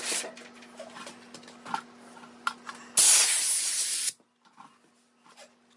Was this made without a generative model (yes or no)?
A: yes